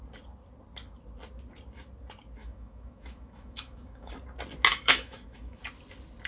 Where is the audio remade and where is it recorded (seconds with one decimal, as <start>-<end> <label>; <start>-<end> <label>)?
0.0-2.4 recorded; 2.4-4.1 remade; 4.1-4.7 recorded; 4.7-5.6 remade; 5.6-6.3 recorded